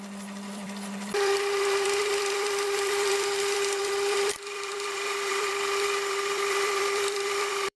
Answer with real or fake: fake